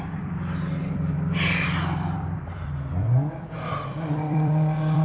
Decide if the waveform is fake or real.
fake